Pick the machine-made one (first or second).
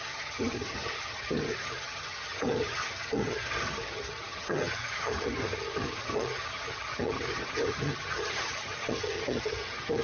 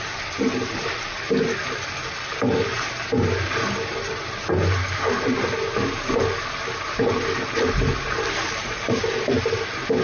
first